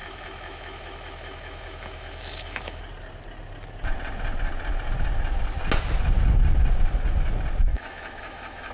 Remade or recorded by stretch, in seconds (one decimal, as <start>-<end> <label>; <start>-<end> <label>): 0.0-2.8 remade; 2.8-7.7 recorded; 7.7-8.7 remade